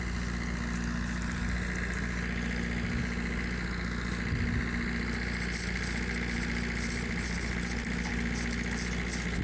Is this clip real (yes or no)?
yes